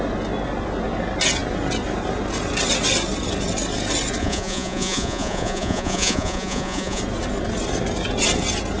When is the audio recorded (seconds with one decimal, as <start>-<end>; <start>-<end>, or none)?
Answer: 0.0-4.2; 7.0-8.8